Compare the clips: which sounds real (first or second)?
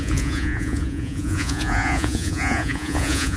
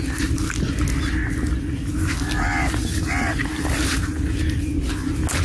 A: second